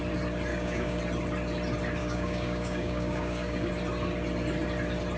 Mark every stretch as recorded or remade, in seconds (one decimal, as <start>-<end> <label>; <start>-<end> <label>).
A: 0.0-0.5 recorded; 0.5-1.0 remade; 1.0-2.0 recorded; 2.0-3.7 remade; 3.7-5.2 recorded